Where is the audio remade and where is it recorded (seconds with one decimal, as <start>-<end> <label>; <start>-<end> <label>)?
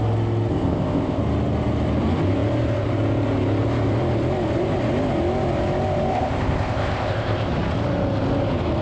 0.0-0.5 recorded; 0.5-1.2 remade; 1.2-6.1 recorded; 6.1-7.5 remade; 7.5-8.8 recorded